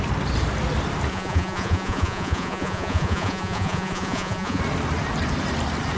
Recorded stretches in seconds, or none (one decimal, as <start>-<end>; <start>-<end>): 0.0-1.1; 4.6-6.0